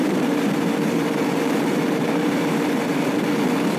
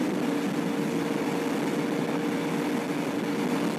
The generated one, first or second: first